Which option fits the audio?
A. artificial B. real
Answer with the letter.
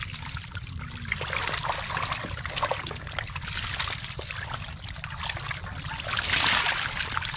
B